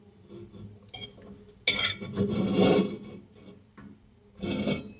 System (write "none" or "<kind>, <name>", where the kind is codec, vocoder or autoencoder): none